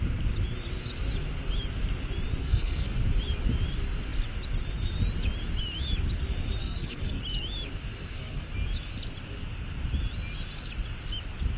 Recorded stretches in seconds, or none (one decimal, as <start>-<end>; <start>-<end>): 0.0-2.4; 3.0-6.6; 7.2-7.9; 8.5-11.6